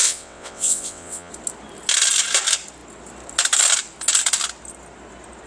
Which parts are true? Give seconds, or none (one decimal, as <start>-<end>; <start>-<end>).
1.3-5.5